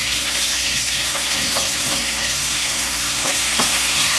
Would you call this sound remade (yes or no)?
yes